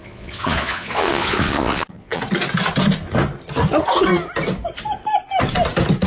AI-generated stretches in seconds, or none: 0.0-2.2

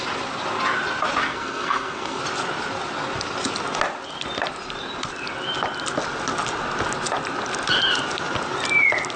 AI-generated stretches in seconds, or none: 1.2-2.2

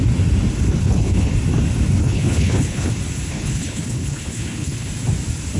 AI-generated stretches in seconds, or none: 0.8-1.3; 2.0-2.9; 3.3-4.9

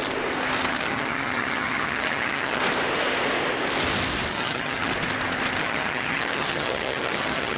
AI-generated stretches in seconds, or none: 0.7-2.6; 4.3-4.9; 5.6-7.6

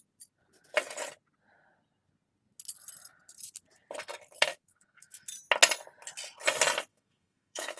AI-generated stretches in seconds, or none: 4.5-5.3; 6.9-7.8

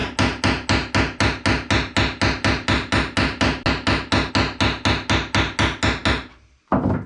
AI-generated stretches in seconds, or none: none